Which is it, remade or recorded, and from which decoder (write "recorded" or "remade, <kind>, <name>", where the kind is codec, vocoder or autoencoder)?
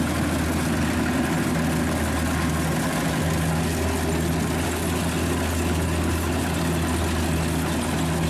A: recorded